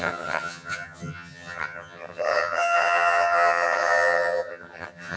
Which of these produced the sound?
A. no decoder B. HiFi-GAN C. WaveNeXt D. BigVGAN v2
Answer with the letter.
B